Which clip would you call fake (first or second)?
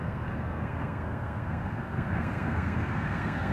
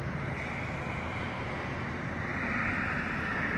first